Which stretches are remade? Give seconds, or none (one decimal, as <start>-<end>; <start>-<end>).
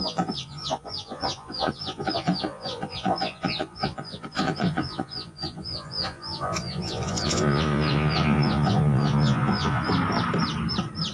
0.0-9.9